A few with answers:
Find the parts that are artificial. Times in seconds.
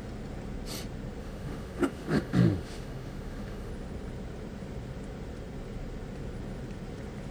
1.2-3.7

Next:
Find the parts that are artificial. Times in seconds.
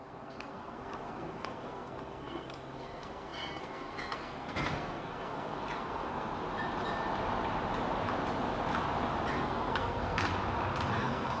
0.0-6.3; 9.3-10.3; 10.9-11.4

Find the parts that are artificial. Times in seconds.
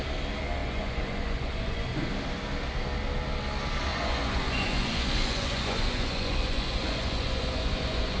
0.6-2.1; 3.9-8.2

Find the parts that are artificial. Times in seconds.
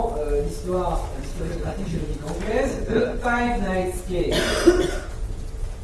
1.3-2.0; 2.7-3.2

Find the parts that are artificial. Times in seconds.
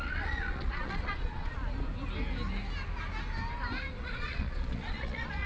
0.0-1.6; 4.0-5.5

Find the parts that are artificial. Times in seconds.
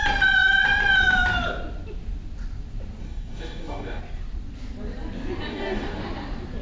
3.0-4.0; 5.5-6.0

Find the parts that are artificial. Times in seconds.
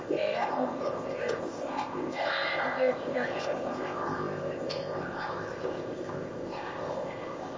0.0-7.6